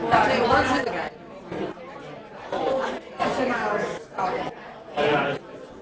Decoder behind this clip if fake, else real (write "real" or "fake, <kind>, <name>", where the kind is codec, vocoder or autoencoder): fake, vocoder, BigVGAN v2